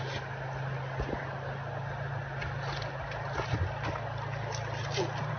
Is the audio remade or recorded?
recorded